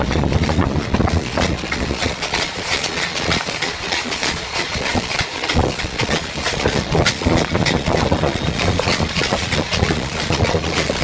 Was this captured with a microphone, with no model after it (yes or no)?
no